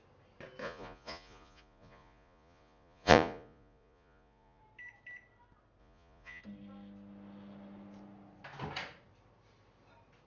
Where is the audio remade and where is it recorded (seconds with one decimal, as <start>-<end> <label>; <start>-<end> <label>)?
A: 0.0-0.6 recorded; 0.6-4.6 remade; 4.6-5.8 recorded; 5.8-6.4 remade; 6.4-10.3 recorded

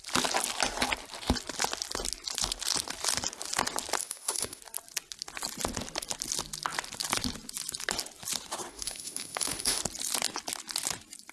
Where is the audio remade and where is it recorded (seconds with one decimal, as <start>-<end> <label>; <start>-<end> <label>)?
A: 0.0-4.0 recorded; 4.0-4.6 remade; 4.6-8.7 recorded; 8.7-9.8 remade; 9.8-11.3 recorded

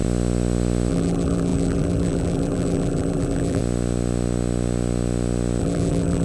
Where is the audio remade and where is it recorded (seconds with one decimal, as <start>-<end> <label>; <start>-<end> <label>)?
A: 0.0-0.9 recorded; 0.9-3.6 remade; 3.6-5.6 recorded; 5.6-6.2 remade